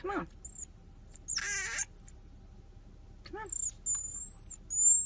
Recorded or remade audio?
recorded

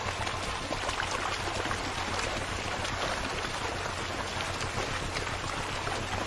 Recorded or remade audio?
recorded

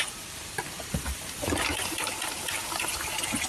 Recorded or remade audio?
recorded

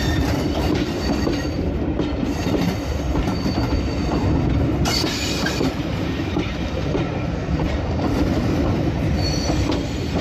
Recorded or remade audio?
remade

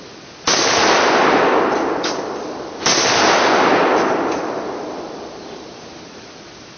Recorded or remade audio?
recorded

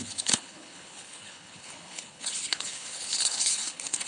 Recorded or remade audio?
remade